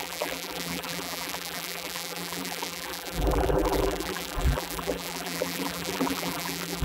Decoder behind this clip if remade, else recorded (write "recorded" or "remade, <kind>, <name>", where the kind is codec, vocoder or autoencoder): remade, vocoder, BigVGAN v2